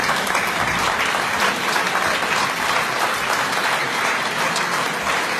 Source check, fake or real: fake